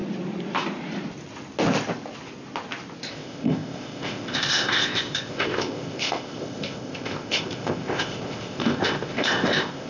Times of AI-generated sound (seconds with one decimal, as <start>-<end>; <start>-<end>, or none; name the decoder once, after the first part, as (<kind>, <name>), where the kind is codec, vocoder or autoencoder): 3.1-9.9 (codec, ZipCodec)

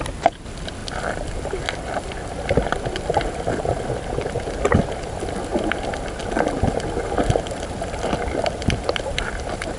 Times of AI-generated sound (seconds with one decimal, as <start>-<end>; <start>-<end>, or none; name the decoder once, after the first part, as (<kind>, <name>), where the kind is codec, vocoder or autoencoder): none

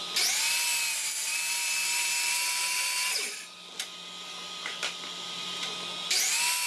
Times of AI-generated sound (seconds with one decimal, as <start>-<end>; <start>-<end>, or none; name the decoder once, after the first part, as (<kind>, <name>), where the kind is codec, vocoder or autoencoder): none

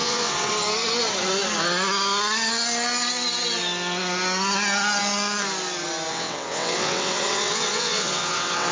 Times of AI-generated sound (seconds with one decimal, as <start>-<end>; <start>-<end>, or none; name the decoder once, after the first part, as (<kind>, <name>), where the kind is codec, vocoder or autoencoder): 0.0-0.5 (vocoder, WaveNeXt); 6.1-8.7

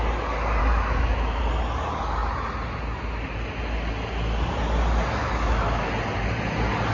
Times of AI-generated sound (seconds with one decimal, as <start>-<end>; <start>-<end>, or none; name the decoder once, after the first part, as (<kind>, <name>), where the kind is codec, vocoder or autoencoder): 0.6-1.4 (autoencoder, DAC-VAE); 5.2-5.9

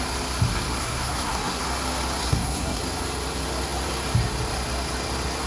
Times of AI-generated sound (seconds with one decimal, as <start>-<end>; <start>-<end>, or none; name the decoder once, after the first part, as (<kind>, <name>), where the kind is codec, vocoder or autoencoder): 0.8-1.6 (codec, SNAC); 2.2-2.8

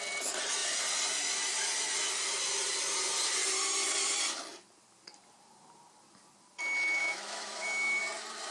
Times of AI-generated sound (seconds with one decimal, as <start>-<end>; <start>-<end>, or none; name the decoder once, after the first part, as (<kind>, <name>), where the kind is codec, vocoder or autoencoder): 7.0-8.0 (autoencoder, DAC-VAE)